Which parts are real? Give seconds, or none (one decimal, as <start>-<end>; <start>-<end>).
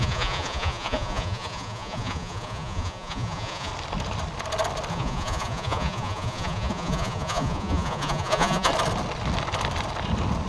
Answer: 3.7-4.9; 8.7-10.5